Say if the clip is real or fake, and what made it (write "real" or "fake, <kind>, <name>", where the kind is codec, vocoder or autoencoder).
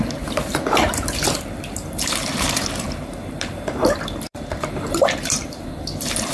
fake, vocoder, BigVGAN v2